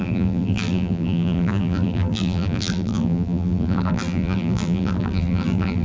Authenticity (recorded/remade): remade